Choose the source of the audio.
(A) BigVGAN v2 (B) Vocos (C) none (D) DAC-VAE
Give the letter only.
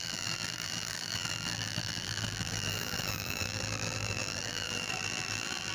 A